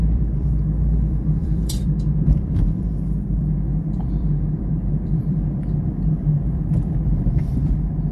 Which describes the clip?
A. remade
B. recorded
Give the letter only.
A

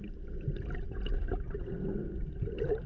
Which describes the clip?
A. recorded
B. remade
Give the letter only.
A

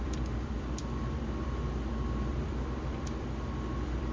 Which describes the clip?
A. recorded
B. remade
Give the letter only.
B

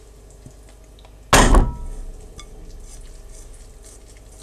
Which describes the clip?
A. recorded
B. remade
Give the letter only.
A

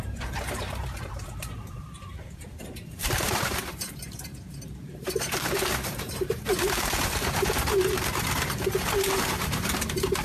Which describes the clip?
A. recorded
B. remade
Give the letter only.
B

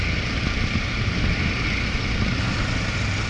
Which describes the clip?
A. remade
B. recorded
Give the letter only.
B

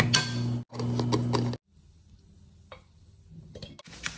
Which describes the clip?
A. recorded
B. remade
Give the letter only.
A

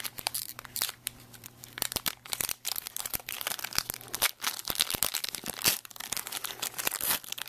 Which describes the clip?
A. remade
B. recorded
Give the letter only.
A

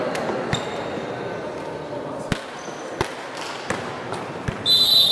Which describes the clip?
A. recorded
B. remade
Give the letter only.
A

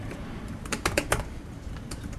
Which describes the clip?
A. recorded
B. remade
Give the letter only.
B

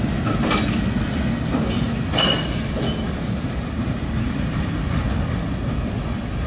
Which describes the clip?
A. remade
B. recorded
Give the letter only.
B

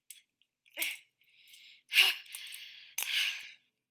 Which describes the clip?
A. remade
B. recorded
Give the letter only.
B